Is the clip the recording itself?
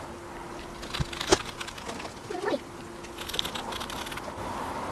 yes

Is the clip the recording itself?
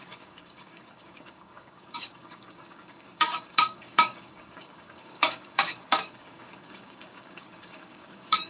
no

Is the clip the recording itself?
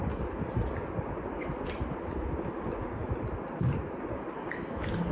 yes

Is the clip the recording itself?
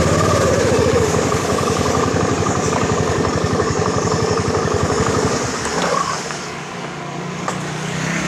no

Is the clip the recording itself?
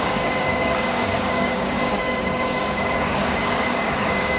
no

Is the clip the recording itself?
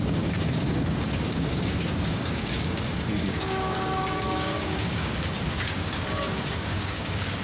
no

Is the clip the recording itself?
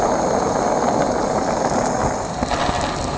yes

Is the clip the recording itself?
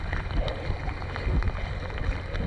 yes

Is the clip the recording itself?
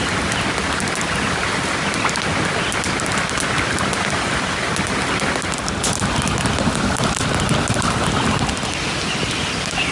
yes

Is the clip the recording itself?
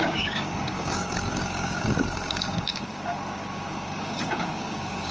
no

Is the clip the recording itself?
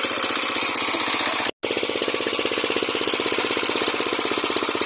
yes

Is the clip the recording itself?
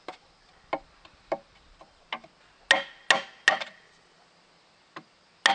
yes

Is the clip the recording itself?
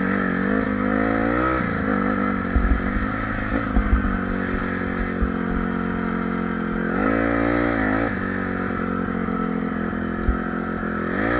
yes